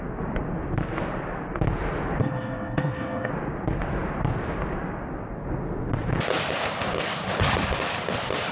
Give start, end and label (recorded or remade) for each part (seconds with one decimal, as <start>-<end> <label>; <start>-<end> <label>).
0.0-2.2 recorded; 2.2-3.3 remade; 3.3-8.5 recorded

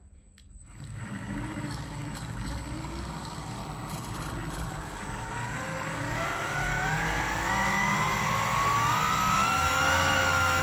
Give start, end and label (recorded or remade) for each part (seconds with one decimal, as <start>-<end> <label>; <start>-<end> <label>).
0.0-3.6 remade; 3.6-4.7 recorded; 4.7-10.6 remade